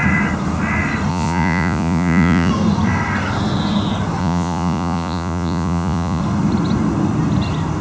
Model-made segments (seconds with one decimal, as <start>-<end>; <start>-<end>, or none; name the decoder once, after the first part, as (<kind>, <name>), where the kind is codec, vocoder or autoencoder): 1.1-2.5 (vocoder, Vocos); 4.2-6.2